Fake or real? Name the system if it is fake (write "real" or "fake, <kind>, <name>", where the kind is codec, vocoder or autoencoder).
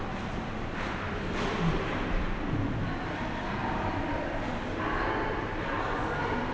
real